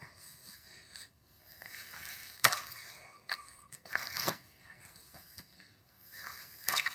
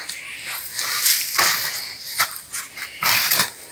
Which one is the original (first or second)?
second